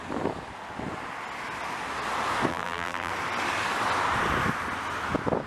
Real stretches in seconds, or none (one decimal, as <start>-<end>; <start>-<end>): 0.0-2.5; 3.1-5.5